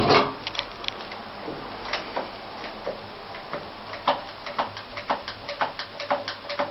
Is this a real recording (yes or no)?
yes